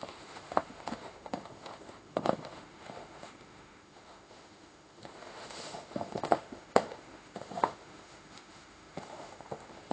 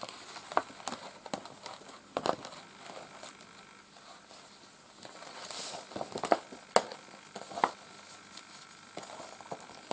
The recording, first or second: second